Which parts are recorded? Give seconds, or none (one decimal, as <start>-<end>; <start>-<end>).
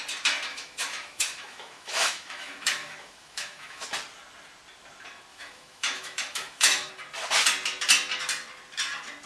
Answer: 0.0-0.5; 3.8-5.3; 6.9-9.3